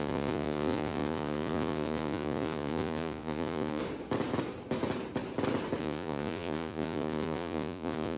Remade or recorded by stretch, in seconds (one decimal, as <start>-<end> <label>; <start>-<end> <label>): 0.0-3.8 remade; 3.8-5.8 recorded; 5.8-8.2 remade

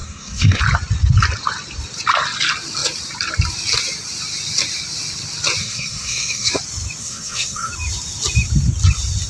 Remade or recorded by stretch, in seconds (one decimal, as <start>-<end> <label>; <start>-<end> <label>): 0.0-0.6 remade; 0.6-5.6 recorded; 5.6-6.5 remade; 6.5-7.0 recorded; 7.0-7.7 remade; 7.7-9.3 recorded

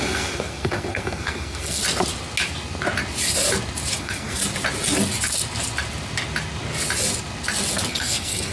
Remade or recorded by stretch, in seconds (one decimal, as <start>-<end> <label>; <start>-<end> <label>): 0.0-1.8 remade; 1.8-4.0 recorded; 4.0-4.4 remade; 4.4-7.9 recorded; 7.9-8.5 remade

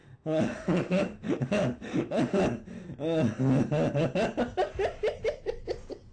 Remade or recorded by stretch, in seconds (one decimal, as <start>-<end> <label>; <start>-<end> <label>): 0.0-2.4 remade; 2.4-6.1 recorded

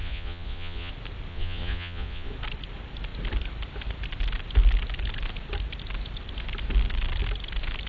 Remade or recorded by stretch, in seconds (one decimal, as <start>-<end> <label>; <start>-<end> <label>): 0.0-0.9 remade; 0.9-1.3 recorded; 1.3-2.3 remade; 2.3-7.9 recorded